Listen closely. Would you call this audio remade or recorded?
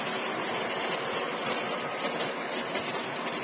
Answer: recorded